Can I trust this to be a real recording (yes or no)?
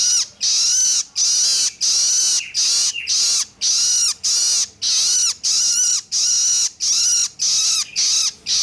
yes